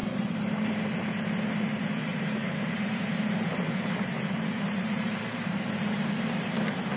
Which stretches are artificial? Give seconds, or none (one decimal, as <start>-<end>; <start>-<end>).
2.1-6.1

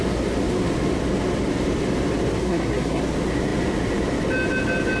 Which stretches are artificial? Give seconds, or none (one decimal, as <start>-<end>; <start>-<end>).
2.4-3.0

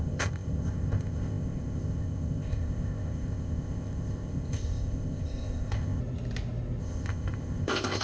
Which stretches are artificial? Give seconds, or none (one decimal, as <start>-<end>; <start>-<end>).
0.0-6.0; 6.8-8.0

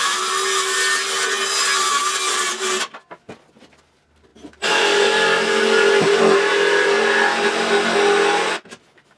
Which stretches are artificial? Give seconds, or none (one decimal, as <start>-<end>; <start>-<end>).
none

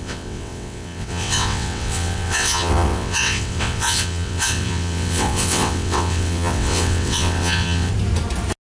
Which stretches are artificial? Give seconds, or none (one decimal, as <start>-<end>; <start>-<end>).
0.0-7.9

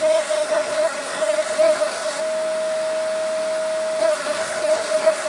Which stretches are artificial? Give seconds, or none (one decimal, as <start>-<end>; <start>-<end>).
0.0-2.2; 4.0-5.3